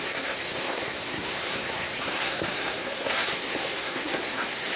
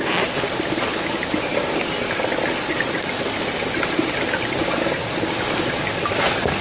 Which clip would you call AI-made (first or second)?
first